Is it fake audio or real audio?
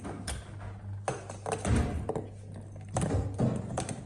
real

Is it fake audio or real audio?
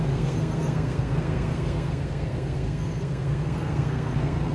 fake